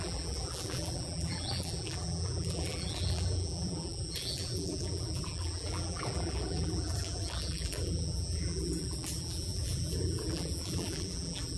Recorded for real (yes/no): no